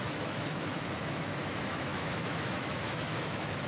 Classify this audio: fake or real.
fake